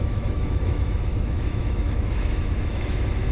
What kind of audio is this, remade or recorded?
remade